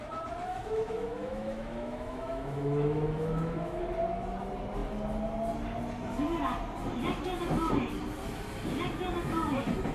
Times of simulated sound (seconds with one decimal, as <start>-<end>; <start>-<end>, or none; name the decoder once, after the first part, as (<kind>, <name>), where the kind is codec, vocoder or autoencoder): 0.5-3.8 (autoencoder, DAC-VAE)